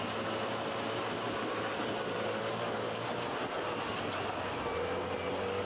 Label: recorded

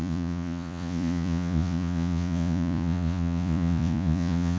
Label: remade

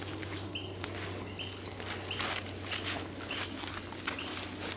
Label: recorded